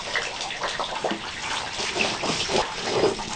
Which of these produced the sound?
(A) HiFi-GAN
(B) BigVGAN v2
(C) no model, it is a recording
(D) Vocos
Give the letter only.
C